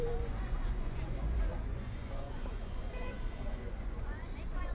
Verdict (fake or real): fake